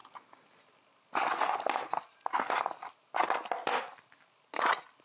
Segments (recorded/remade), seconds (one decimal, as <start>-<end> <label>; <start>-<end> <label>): 0.0-5.0 recorded